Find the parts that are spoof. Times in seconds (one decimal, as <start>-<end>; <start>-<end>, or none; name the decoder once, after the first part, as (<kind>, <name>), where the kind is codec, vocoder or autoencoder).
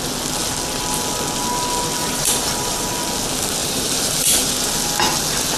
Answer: 2.0-2.9 (vocoder, BigVGAN v2); 3.6-4.5